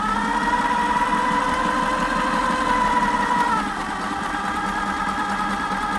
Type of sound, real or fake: real